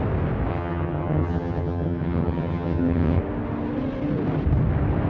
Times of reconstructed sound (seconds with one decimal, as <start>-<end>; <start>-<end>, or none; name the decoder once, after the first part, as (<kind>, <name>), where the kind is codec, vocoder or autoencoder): 0.5-3.2 (vocoder, HiFi-GAN)